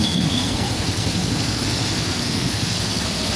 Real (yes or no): no